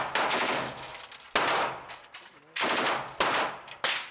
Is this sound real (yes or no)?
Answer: yes